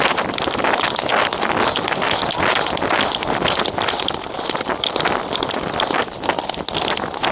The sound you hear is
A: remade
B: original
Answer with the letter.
B